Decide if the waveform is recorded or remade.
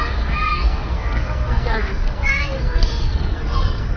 remade